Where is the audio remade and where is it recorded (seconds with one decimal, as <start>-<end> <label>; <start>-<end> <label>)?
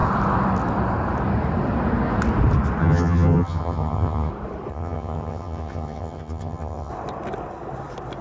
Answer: 0.0-2.8 recorded; 2.8-4.3 remade; 4.3-4.7 recorded; 4.7-6.9 remade; 6.9-8.2 recorded